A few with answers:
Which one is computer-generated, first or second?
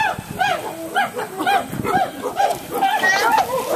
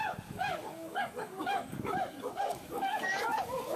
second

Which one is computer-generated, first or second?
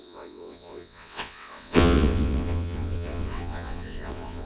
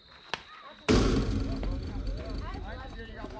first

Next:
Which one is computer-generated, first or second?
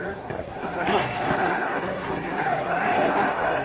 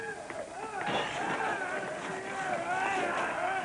first